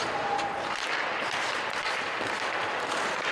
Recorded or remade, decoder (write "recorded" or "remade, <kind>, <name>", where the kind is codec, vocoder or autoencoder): recorded